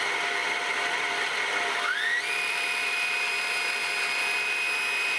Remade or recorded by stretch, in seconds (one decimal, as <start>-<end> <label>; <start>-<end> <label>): 0.0-0.4 recorded; 0.4-3.5 remade; 3.5-5.2 recorded